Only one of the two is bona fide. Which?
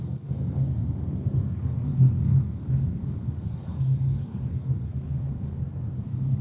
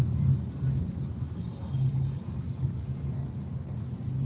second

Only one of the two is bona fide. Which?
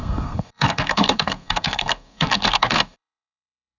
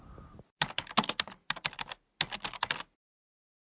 second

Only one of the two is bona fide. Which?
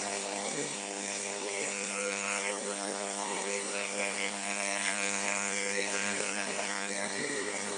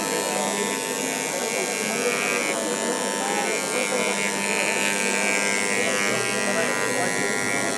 second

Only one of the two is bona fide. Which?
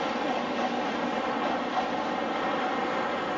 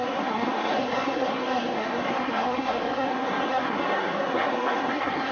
first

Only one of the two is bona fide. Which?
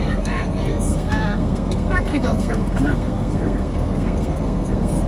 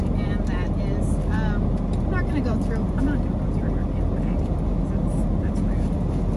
second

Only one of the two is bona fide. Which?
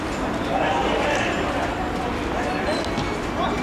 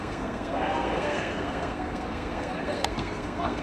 first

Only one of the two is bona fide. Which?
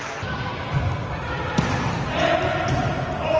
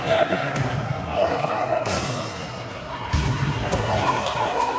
first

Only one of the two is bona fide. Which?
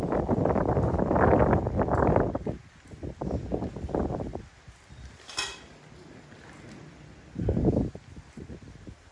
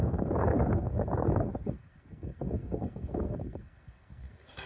first